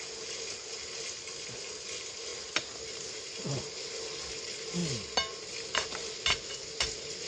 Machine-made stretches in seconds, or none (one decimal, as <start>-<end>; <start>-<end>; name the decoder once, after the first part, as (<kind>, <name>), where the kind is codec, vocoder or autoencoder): none

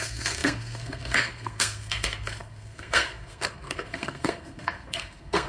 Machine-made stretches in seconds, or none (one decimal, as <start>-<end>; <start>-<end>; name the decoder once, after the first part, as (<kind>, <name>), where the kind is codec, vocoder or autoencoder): 0.0-5.5 (codec, SNAC)

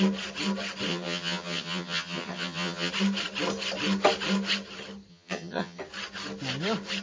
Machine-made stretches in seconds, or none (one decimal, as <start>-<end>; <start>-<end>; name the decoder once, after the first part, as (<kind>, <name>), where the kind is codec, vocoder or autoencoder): 0.9-2.9 (vocoder, HiFi-GAN); 5.1-5.8